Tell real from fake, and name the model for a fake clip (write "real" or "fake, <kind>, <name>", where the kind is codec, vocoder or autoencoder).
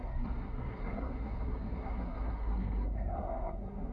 fake, codec, SNAC